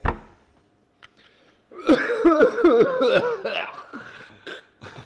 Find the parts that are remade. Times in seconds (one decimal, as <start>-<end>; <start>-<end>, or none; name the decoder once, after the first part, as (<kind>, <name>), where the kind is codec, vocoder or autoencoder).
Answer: 0.8-3.0 (vocoder, Vocos); 3.5-4.3